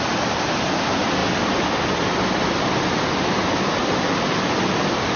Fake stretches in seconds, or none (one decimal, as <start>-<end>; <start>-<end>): none